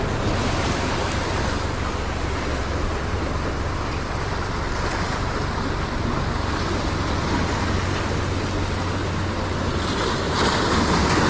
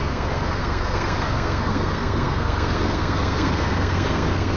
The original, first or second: first